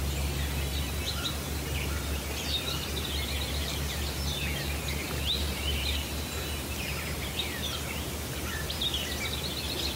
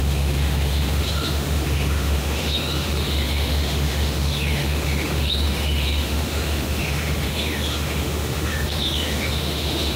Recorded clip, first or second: first